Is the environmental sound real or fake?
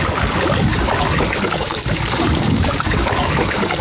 fake